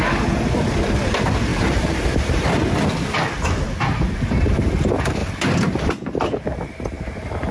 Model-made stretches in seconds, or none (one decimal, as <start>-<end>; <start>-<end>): 1.5-2.5; 5.2-5.9